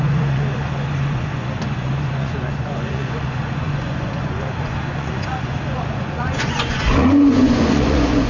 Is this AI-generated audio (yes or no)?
yes